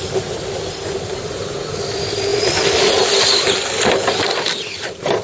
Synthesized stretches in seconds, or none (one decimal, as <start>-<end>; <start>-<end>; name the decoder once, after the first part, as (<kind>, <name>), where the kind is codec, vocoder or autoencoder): none